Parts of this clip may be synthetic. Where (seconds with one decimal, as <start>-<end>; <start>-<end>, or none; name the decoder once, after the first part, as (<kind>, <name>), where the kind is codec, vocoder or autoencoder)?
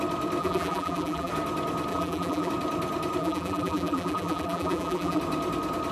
0.4-1.3 (vocoder, BigVGAN v2); 1.9-2.5; 3.2-5.2